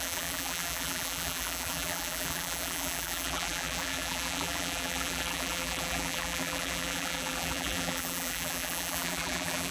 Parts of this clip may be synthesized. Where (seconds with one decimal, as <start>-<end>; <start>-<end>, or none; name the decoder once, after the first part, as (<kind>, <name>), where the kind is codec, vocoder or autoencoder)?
0.0-9.7 (vocoder, BigVGAN v2)